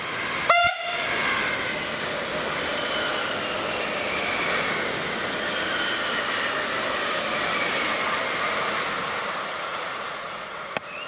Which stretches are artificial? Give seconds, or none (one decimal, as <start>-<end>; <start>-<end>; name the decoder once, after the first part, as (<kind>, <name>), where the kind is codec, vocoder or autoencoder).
9.7-10.7 (vocoder, Vocos)